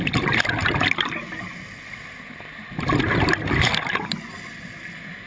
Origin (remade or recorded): recorded